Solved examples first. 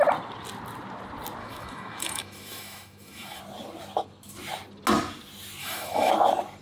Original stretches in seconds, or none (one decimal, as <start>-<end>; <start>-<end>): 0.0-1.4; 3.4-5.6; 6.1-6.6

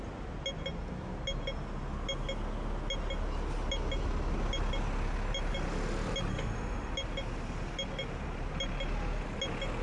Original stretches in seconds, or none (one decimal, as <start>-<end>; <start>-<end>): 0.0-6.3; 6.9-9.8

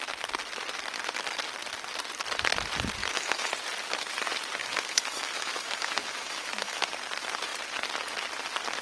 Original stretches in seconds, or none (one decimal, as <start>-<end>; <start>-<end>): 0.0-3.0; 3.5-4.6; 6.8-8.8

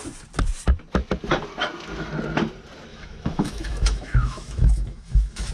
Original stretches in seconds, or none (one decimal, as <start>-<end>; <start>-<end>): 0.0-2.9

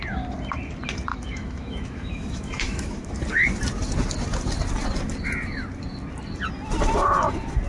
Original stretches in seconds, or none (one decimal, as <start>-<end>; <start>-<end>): 0.0-1.1; 3.1-7.7